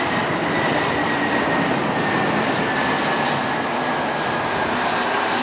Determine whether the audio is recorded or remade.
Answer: recorded